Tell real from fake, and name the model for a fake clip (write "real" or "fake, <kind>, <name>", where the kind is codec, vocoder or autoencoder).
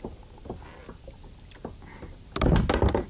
real